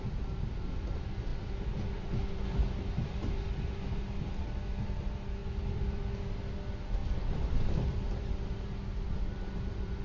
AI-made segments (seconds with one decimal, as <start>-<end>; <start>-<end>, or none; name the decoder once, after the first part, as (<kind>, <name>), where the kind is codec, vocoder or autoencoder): 5.4-6.0 (vocoder, BigVGAN v2); 7.0-9.3